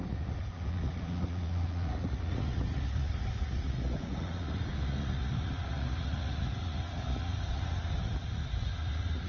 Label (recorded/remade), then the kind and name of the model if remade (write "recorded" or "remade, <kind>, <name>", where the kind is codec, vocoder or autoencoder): remade, vocoder, Vocos